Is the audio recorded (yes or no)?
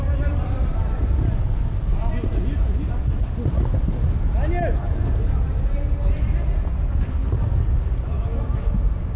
yes